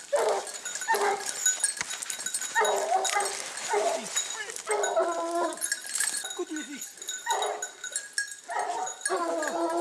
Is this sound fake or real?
real